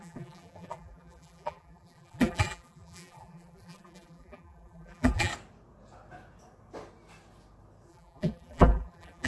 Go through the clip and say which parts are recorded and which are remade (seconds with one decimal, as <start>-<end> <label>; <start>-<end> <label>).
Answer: 0.0-5.3 remade; 5.3-7.9 recorded; 7.9-9.3 remade